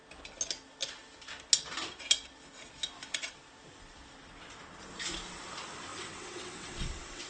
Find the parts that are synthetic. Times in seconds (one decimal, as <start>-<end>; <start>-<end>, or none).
5.9-7.3